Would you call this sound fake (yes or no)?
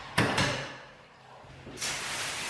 yes